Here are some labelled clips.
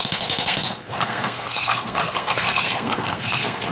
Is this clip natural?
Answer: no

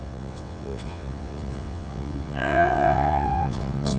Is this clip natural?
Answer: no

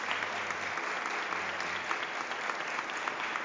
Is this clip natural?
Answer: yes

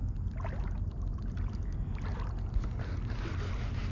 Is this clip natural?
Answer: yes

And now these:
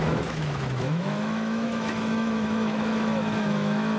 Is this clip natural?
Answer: no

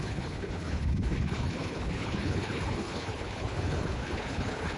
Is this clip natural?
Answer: no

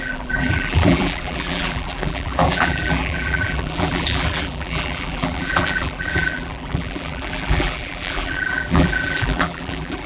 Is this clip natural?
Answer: no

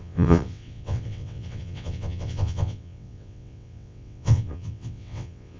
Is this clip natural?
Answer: no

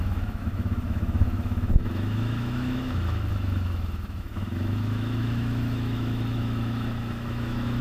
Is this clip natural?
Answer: no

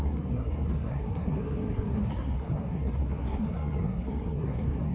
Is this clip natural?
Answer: no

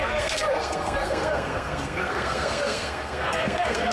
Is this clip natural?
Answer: no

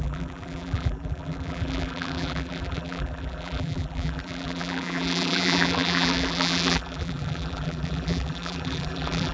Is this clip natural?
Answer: no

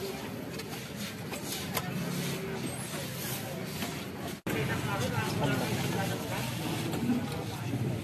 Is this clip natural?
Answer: yes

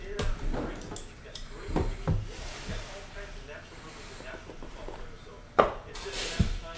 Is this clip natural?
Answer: yes